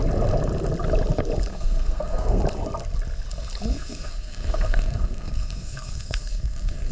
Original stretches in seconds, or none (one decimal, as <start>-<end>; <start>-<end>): 0.0-1.5; 2.4-3.7